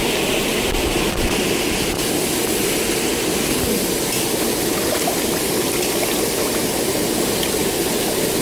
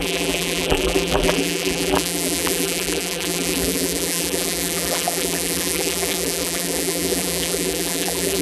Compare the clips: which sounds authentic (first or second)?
first